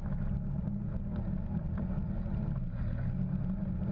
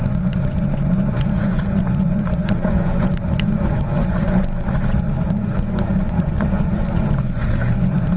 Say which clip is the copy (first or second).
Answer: second